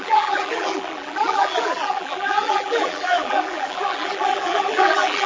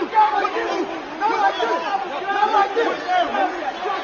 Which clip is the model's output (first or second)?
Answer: first